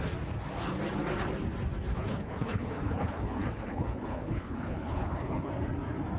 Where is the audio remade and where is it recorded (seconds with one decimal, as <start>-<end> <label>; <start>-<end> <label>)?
0.0-1.9 recorded; 1.9-5.5 remade; 5.5-6.2 recorded

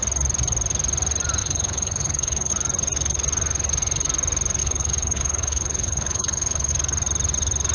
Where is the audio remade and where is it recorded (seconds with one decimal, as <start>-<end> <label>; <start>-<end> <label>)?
0.0-1.4 recorded; 1.4-2.5 remade; 2.5-4.6 recorded; 4.6-6.7 remade; 6.7-7.7 recorded